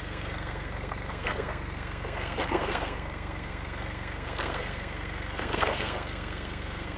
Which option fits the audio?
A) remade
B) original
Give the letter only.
A